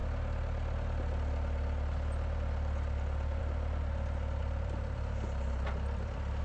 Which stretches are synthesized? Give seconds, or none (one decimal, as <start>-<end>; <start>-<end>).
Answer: 4.4-6.4